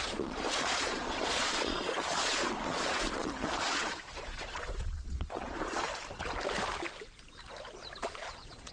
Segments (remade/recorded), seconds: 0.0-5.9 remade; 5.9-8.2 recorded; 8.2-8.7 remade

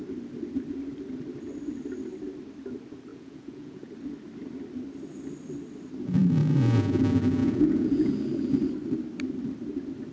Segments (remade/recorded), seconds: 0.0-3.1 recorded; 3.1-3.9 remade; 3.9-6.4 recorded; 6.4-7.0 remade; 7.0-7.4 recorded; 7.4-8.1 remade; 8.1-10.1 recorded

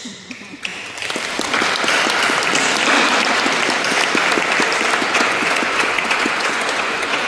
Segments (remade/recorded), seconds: 0.0-0.7 remade; 0.7-5.1 recorded; 5.1-7.3 remade

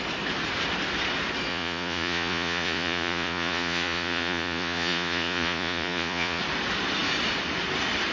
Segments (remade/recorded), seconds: 0.0-1.5 recorded; 1.5-6.4 remade; 6.4-8.1 recorded

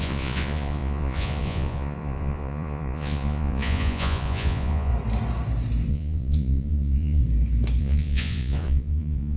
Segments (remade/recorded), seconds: 0.0-4.9 remade; 4.9-5.9 recorded; 5.9-7.2 remade; 7.2-7.8 recorded; 7.8-9.4 remade

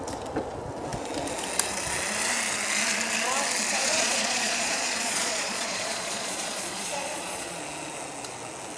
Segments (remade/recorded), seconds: 0.0-3.7 recorded; 3.7-7.6 remade; 7.6-8.8 recorded

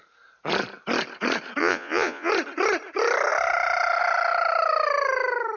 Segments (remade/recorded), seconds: 0.0-1.6 recorded; 1.6-2.3 remade; 2.3-5.6 recorded

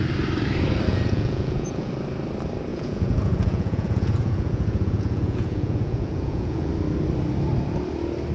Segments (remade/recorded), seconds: 0.0-0.9 recorded; 0.9-1.9 remade; 1.9-2.7 recorded; 2.7-6.7 remade; 6.7-8.3 recorded